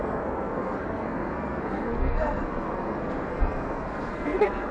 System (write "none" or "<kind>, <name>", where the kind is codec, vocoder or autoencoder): codec, SNAC